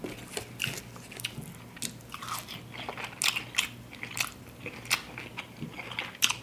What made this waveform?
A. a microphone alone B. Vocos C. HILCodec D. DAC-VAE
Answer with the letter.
A